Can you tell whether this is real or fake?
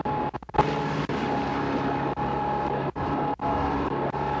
real